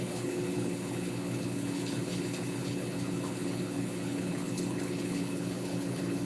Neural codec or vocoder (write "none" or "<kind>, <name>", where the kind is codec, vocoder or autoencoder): codec, HILCodec